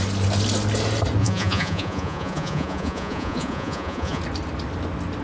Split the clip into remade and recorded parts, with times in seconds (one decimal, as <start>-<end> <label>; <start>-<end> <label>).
0.0-1.2 recorded; 1.2-4.2 remade; 4.2-5.2 recorded